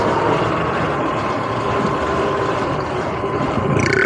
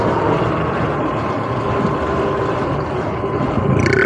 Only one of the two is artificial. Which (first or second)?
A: first